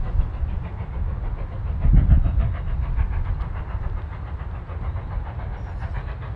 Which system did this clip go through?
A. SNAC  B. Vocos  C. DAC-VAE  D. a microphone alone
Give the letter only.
D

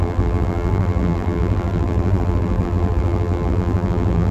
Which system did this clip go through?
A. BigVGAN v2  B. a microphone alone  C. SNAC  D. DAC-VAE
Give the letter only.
A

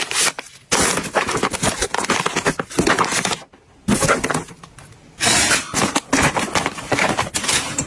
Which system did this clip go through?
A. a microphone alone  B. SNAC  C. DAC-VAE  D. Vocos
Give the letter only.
A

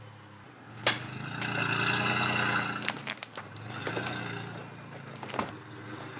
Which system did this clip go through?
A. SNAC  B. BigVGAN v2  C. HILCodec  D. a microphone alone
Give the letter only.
D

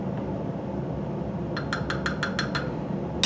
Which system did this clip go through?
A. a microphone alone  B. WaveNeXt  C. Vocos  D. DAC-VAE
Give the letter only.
A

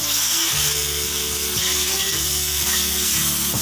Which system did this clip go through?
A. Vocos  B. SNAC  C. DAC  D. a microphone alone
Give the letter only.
B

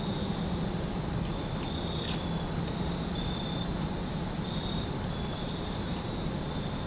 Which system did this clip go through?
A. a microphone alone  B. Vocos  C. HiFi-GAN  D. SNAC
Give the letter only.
A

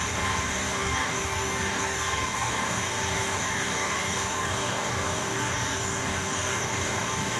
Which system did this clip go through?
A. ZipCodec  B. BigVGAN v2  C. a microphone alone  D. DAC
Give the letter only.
D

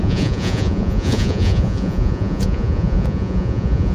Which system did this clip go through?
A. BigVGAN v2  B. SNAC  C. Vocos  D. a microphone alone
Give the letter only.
C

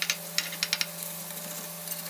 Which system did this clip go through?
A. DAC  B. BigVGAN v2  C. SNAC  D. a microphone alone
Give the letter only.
D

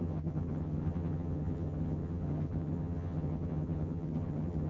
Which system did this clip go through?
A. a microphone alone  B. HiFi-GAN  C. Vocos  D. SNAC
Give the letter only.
B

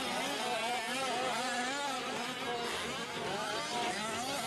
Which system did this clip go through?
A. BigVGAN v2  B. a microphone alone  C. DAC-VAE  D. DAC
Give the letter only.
B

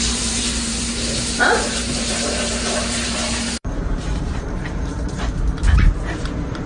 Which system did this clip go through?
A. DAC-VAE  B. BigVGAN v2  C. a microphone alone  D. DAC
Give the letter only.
B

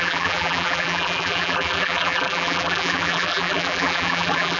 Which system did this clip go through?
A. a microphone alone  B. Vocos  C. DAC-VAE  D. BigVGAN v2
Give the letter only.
D